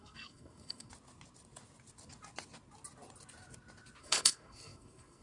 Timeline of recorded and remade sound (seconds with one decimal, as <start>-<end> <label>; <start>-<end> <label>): 0.0-0.9 remade; 0.9-4.0 recorded; 4.0-5.2 remade

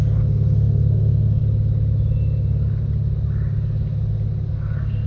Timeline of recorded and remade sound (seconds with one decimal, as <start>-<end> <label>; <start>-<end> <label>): 0.0-1.4 remade; 1.4-4.5 recorded; 4.5-5.1 remade